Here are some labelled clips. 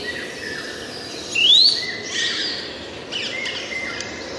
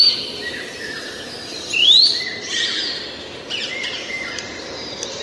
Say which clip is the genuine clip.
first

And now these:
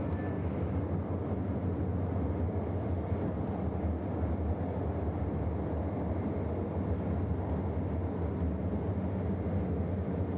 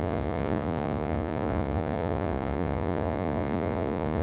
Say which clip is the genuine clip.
first